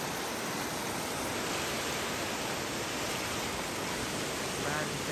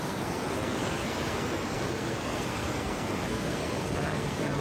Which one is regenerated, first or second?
second